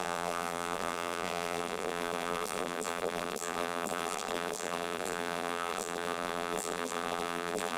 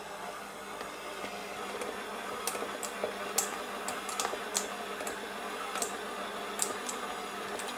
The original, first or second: second